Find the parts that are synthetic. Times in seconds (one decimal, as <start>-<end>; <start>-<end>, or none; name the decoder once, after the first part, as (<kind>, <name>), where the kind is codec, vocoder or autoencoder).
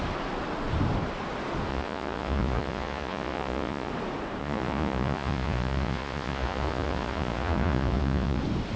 1.7-3.9 (vocoder, Vocos); 4.4-8.4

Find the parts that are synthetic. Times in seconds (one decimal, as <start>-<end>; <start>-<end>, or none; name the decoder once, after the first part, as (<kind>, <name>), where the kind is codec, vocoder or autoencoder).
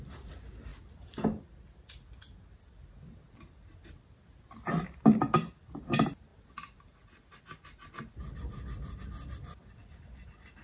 none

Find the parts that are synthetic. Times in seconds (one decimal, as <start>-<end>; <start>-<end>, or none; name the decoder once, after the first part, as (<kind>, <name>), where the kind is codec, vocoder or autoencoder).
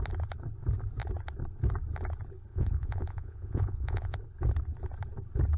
2.5-4.2 (vocoder, Vocos)